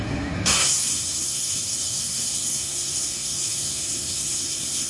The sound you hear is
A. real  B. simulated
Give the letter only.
B